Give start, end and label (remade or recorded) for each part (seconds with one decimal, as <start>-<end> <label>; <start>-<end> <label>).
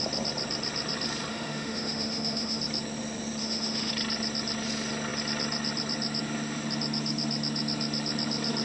0.0-1.3 recorded; 1.3-2.6 remade; 2.6-3.4 recorded; 3.4-3.9 remade; 3.9-8.6 recorded